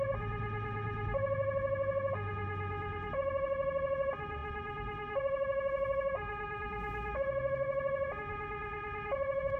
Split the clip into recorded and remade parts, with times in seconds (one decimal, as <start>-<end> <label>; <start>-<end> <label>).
0.0-9.6 recorded